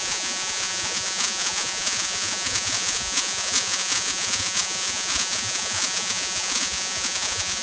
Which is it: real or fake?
fake